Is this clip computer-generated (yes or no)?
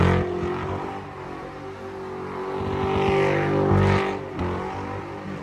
no